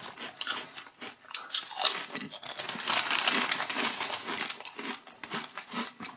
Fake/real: real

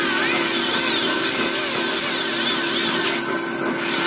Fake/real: real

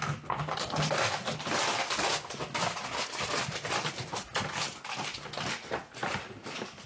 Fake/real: real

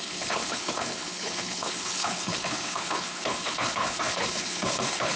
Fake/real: fake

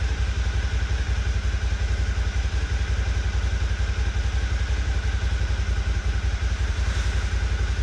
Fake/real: real